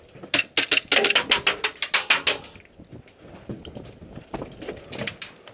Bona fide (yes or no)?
yes